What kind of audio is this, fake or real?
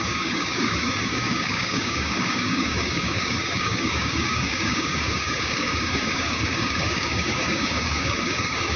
fake